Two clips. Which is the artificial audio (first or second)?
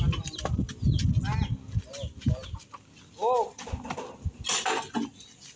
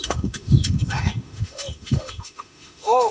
second